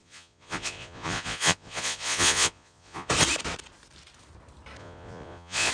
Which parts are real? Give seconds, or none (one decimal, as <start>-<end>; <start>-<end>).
3.1-4.8